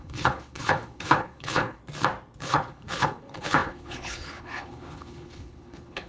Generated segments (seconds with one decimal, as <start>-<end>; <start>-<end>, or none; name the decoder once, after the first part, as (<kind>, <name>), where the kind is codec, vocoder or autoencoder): 0.0-1.8 (codec, HILCodec); 2.4-6.1